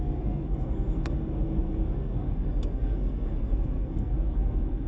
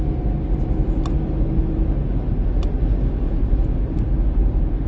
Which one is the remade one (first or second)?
first